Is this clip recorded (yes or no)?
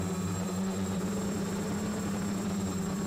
no